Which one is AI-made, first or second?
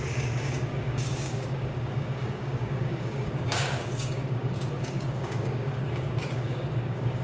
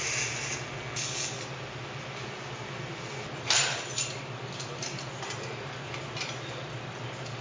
first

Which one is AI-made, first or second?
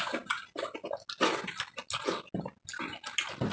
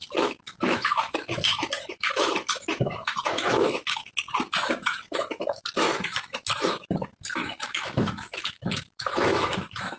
second